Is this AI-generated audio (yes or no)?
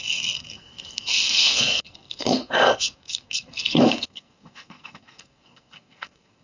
yes